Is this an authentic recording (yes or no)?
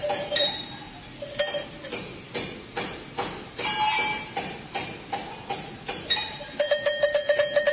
yes